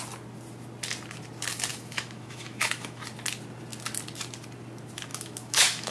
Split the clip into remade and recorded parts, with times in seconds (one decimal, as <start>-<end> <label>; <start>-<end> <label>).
0.0-1.7 recorded; 1.7-3.0 remade; 3.0-5.1 recorded; 5.1-5.9 remade